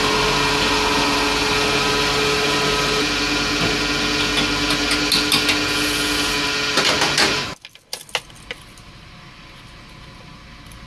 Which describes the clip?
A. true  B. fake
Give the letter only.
A